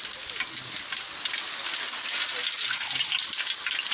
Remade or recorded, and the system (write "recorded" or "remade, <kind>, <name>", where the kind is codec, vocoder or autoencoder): recorded